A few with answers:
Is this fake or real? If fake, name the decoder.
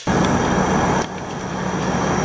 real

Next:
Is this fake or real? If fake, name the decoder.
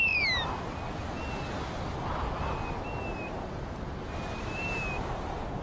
real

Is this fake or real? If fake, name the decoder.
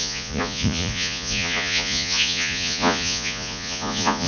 fake, vocoder, Vocos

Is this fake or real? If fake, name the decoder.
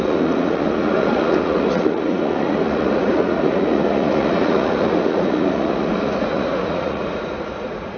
fake, vocoder, Vocos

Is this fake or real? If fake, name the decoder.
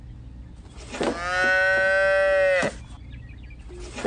real